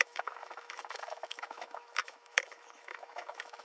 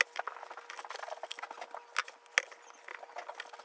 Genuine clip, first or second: second